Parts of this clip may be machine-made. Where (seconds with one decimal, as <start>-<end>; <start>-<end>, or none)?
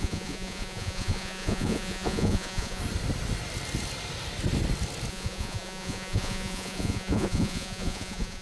0.0-2.8; 5.1-8.4